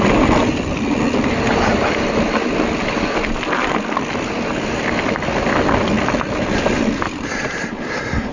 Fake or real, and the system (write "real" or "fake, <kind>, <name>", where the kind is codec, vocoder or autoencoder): real